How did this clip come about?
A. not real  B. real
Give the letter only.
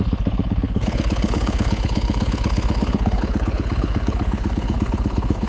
A